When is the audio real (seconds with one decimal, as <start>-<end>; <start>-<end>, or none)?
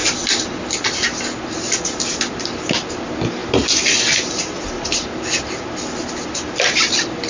0.0-7.3